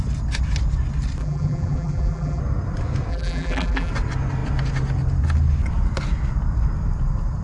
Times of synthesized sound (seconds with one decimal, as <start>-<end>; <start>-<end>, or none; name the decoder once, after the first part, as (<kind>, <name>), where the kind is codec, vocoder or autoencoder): 1.2-2.4 (vocoder, BigVGAN v2); 3.1-3.9

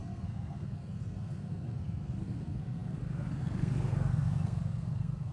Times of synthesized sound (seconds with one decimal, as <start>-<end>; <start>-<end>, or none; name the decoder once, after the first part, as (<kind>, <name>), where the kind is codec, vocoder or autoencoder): 0.0-5.3 (codec, SNAC)

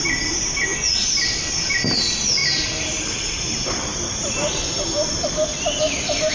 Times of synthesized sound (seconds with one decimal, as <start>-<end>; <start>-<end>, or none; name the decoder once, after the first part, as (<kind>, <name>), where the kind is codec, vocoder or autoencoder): 2.4-6.3 (vocoder, BigVGAN v2)

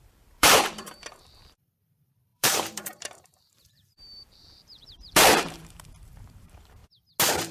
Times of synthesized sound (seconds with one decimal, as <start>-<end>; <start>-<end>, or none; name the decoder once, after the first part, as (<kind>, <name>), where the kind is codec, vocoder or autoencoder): 0.0-6.8 (vocoder, BigVGAN v2)